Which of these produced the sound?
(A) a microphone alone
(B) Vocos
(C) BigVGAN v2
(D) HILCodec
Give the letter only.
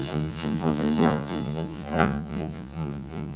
B